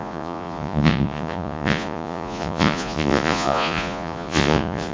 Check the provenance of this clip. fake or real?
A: fake